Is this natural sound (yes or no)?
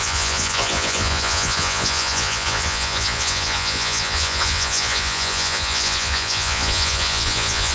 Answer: no